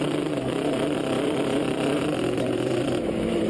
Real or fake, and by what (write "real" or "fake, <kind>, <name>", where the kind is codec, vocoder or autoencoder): fake, vocoder, BigVGAN v2